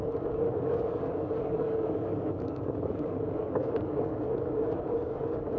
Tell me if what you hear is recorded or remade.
remade